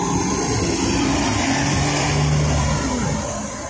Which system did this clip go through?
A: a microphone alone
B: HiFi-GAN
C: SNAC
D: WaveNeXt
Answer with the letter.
A